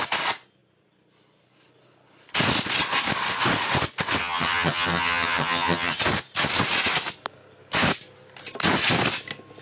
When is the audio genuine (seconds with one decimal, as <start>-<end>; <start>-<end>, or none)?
0.0-4.2; 6.0-9.6